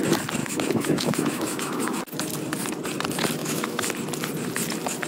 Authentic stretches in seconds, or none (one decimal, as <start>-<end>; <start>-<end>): 0.0-0.4; 2.0-3.4; 3.9-5.1